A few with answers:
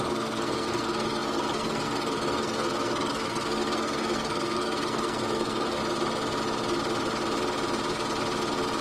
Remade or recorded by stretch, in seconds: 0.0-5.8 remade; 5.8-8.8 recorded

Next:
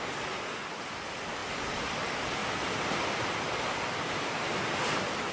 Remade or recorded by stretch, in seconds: 0.0-5.3 recorded